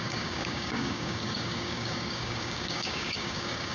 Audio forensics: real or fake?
fake